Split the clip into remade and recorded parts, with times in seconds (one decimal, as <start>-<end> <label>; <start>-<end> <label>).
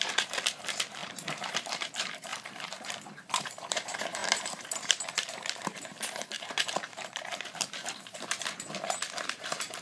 0.0-9.8 remade